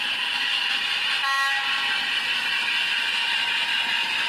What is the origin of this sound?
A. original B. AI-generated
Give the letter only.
A